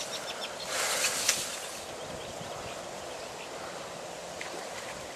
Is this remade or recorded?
recorded